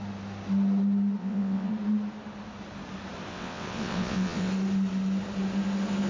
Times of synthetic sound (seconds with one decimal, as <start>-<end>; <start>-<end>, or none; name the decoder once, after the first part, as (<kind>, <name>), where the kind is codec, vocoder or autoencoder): 1.2-1.7 (vocoder, WaveNeXt); 3.3-4.5